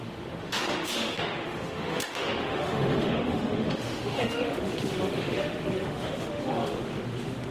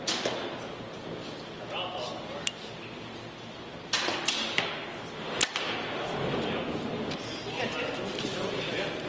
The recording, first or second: second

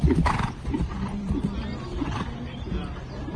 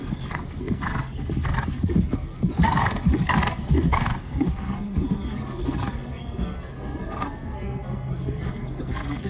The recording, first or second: first